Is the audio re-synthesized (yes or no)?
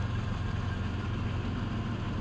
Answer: no